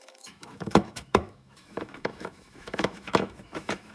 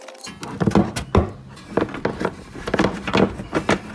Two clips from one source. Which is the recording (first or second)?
second